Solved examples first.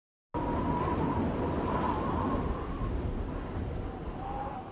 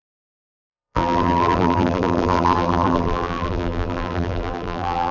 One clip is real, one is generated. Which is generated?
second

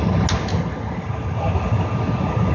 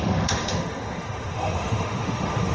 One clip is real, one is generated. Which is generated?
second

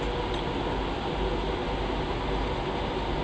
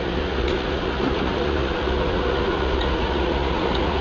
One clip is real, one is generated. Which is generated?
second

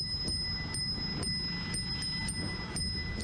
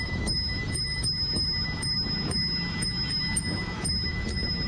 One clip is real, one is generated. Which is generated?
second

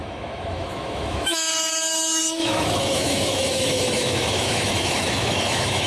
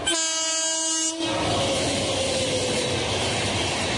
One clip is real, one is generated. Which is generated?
first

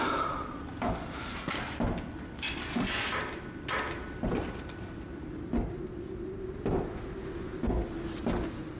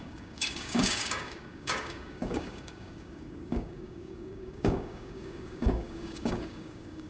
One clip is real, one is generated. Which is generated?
second